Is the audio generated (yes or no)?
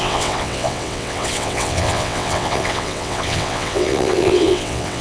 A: yes